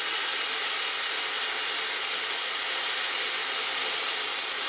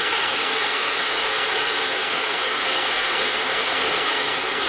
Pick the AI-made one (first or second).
second